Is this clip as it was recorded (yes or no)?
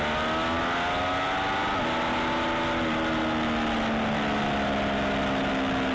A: yes